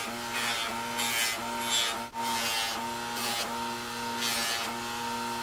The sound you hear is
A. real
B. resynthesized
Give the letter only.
A